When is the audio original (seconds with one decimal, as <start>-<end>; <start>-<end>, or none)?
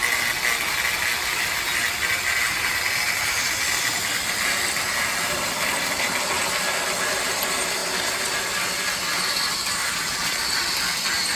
0.0-11.3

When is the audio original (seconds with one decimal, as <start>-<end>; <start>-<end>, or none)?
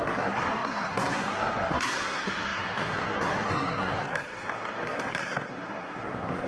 none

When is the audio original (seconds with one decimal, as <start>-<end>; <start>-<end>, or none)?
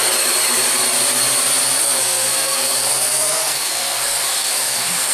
0.0-1.8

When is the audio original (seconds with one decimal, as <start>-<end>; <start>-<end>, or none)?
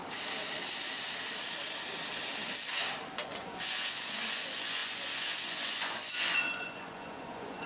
0.0-3.2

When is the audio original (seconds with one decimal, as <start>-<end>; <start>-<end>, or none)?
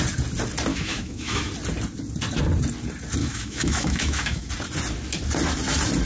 0.0-0.7; 1.5-3.2; 4.5-6.1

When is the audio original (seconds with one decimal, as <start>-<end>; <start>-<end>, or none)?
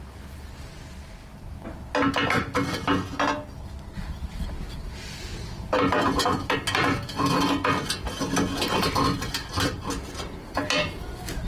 0.0-11.5